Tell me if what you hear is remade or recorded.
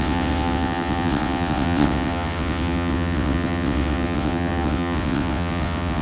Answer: remade